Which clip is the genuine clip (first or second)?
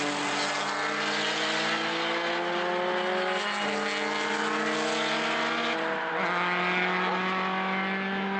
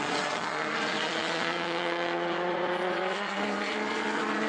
first